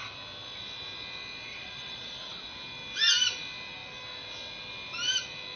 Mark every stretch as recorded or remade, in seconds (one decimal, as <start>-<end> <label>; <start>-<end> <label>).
0.0-1.5 recorded; 1.5-2.3 remade; 2.3-5.6 recorded

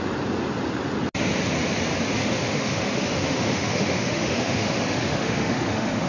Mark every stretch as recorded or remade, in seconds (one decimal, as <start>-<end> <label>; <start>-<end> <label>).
0.0-2.2 recorded; 2.2-6.1 remade

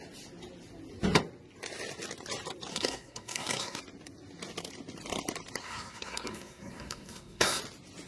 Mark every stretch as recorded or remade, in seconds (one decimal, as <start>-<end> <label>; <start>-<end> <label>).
0.0-2.7 recorded; 2.7-3.8 remade; 3.8-5.6 recorded; 5.6-7.6 remade; 7.6-8.1 recorded

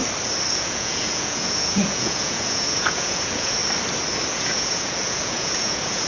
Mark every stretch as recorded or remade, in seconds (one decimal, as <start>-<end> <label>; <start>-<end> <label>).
0.0-0.5 recorded; 0.5-3.6 remade; 3.6-4.3 recorded; 4.3-6.1 remade

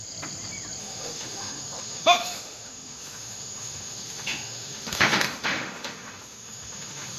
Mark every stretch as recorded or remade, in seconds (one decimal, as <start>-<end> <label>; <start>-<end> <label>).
0.0-0.8 recorded; 0.8-7.2 remade

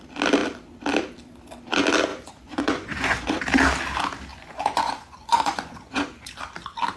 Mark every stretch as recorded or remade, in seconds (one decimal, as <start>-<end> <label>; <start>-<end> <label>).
0.0-2.1 recorded; 2.1-3.4 remade; 3.4-4.3 recorded; 4.3-6.3 remade; 6.3-7.0 recorded